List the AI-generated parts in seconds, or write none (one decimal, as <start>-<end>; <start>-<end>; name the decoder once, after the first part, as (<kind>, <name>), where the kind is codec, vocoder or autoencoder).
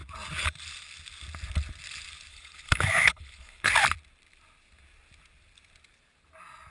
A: 2.3-3.7 (codec, HILCodec)